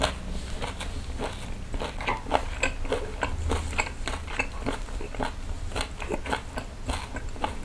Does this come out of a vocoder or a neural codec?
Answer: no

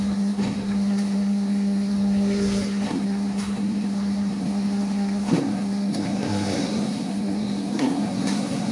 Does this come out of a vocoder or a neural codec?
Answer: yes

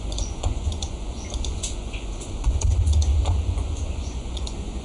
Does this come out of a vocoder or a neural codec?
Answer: yes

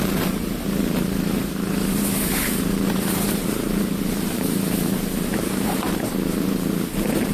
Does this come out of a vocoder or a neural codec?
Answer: yes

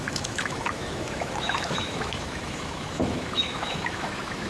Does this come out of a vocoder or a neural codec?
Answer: yes